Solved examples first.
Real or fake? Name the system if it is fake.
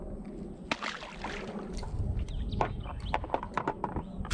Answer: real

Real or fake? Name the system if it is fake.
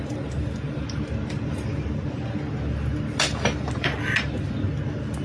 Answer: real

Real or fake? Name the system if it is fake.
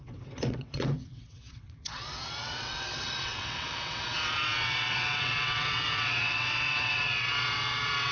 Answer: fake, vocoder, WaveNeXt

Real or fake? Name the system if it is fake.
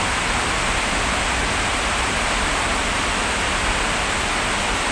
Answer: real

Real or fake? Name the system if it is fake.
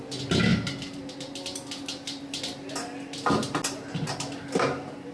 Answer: real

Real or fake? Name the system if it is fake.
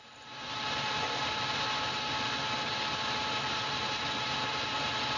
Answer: real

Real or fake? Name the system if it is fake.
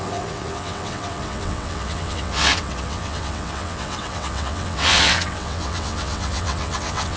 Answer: fake, vocoder, WaveNeXt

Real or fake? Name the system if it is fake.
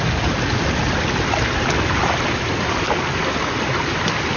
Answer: real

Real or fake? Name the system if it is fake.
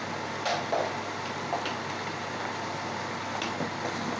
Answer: real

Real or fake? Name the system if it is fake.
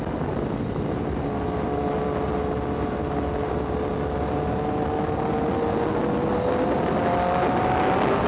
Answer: real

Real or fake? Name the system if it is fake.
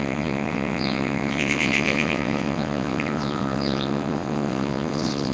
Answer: fake, vocoder, WaveNeXt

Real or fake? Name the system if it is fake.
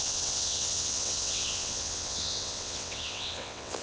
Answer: fake, vocoder, WaveNeXt